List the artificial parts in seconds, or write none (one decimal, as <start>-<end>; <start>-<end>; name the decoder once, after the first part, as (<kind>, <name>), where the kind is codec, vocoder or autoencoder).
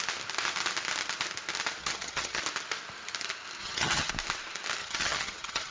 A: 1.8-2.4 (vocoder, HiFi-GAN); 3.6-4.1; 4.8-5.7